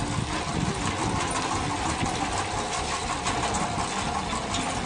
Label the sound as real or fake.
real